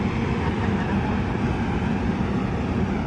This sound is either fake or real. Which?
real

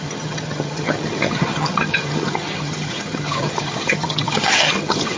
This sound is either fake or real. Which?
fake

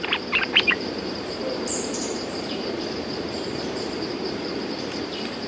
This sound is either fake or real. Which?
fake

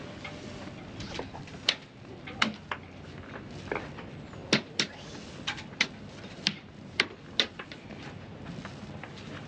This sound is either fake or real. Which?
real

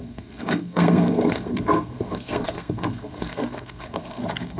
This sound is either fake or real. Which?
fake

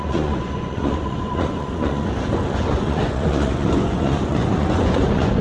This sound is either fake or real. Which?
fake